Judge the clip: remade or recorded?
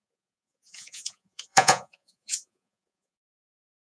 remade